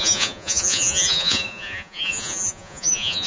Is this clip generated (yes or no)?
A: yes